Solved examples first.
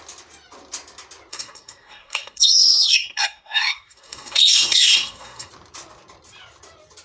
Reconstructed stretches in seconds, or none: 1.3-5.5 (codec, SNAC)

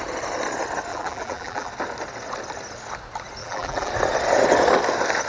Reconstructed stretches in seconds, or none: 0.9-1.7 (vocoder, BigVGAN v2); 3.4-3.9

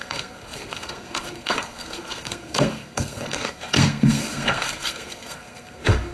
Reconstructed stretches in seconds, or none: 0.0-6.1 (codec, SNAC)

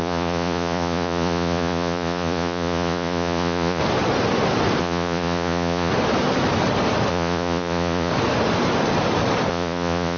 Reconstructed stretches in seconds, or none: 0.0-3.8 (vocoder, Vocos); 4.8-5.9; 7.1-8.1; 9.5-10.2

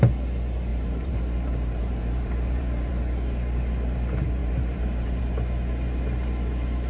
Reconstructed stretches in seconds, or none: 0.7-2.9 (vocoder, BigVGAN v2); 4.4-5.2

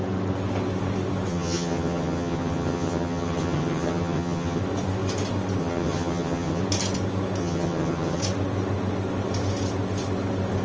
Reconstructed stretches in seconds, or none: 1.3-4.6 (vocoder, HiFi-GAN); 5.6-6.6; 7.4-8.2

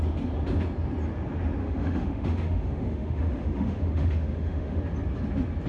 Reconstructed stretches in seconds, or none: 1.6-4.8 (autoencoder, DAC-VAE)